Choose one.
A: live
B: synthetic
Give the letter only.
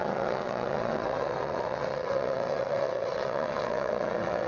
B